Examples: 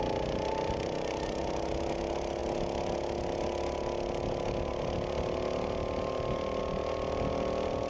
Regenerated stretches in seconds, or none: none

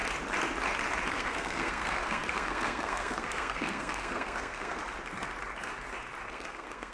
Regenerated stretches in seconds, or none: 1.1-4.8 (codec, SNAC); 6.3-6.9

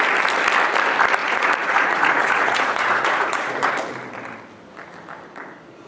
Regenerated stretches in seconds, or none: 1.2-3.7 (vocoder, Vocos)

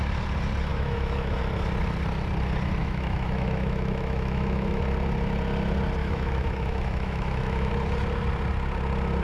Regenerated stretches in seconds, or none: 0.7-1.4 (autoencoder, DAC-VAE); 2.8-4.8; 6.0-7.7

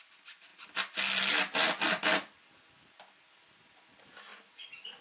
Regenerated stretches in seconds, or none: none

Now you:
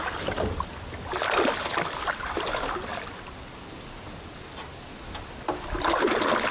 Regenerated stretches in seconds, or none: none

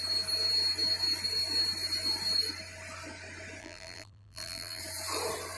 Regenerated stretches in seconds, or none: 3.6-4.8 (vocoder, BigVGAN v2)

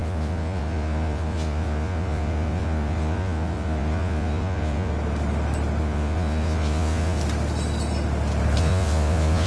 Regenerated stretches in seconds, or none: 0.0-4.9 (vocoder, Vocos); 5.8-7.2; 8.6-9.5